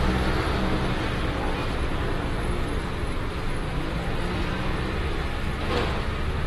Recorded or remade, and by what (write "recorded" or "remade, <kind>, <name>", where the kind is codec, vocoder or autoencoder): recorded